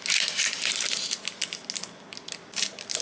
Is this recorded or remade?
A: recorded